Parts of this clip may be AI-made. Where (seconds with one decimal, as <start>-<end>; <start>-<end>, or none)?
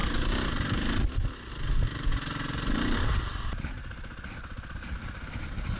none